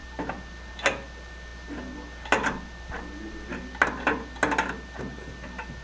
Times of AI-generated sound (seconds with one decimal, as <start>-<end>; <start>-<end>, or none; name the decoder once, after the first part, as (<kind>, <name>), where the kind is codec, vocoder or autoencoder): none